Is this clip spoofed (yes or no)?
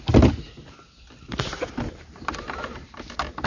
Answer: no